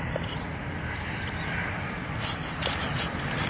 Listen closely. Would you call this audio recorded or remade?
recorded